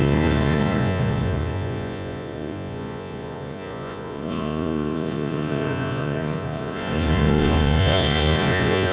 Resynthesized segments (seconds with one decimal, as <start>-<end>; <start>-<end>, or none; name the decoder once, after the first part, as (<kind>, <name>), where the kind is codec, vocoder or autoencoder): 0.0-8.9 (vocoder, Vocos)